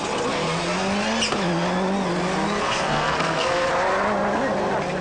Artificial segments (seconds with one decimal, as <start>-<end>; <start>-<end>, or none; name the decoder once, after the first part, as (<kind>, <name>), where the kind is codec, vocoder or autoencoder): 2.6-3.7 (codec, SNAC)